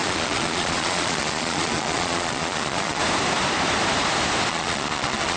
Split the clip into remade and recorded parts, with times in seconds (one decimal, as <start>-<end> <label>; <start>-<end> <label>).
0.0-3.0 remade; 3.0-4.5 recorded; 4.5-5.4 remade